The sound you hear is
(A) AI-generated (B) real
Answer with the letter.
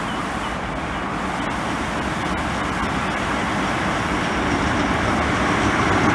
B